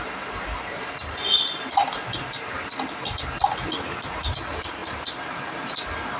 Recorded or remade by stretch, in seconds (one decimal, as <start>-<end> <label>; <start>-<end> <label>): 0.0-6.2 recorded